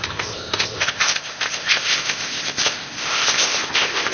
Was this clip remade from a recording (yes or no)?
yes